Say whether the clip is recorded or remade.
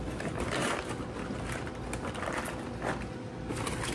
recorded